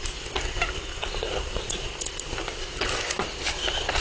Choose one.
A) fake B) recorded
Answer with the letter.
B